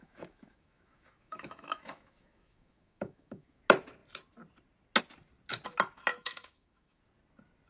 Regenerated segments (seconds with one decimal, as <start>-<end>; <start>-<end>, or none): 0.0-3.6; 6.1-7.0